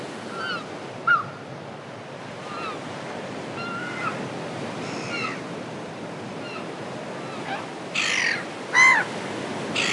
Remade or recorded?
recorded